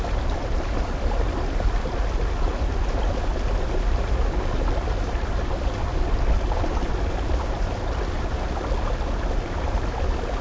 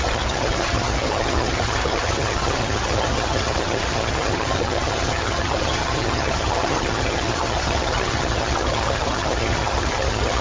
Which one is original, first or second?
first